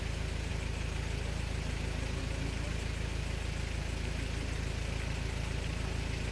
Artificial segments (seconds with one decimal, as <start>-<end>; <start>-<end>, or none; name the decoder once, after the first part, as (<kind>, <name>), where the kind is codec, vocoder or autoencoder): none